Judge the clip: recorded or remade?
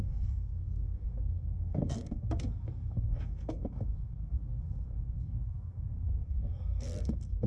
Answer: remade